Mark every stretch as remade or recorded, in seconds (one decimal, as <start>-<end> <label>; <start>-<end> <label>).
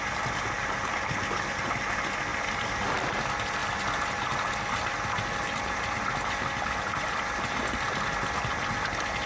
0.0-9.3 recorded